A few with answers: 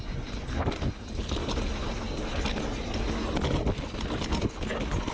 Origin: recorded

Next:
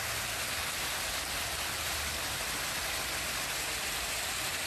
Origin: recorded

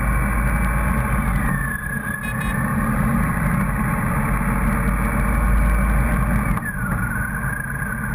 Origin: recorded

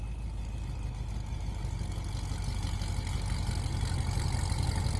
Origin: recorded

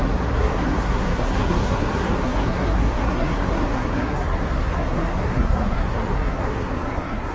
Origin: remade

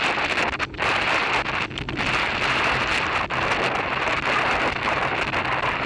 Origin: recorded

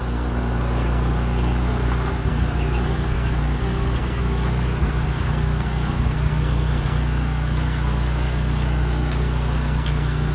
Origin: remade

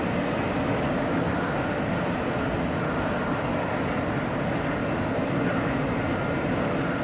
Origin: recorded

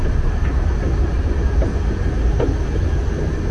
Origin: recorded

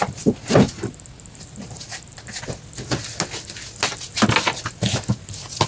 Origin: recorded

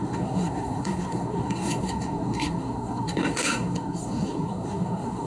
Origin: remade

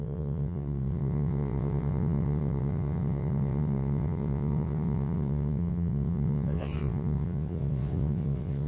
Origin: remade